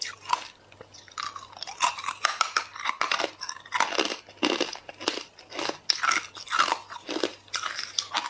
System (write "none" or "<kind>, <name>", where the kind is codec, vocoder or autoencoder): none